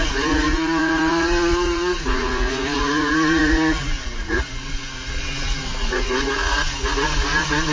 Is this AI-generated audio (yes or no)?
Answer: yes